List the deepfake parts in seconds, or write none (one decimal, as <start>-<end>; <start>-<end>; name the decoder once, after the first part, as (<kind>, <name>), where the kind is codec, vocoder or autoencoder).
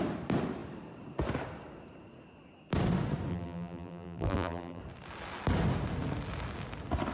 3.3-4.8 (vocoder, BigVGAN v2)